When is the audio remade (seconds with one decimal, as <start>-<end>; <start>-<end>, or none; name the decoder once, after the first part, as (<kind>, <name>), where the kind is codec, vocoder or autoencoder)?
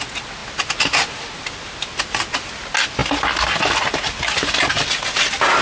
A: none